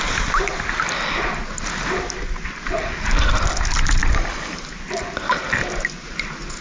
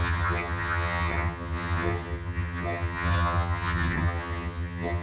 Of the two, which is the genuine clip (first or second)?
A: first